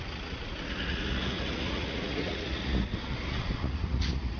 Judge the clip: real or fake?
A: fake